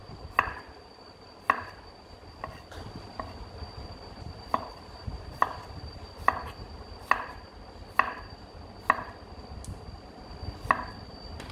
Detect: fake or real real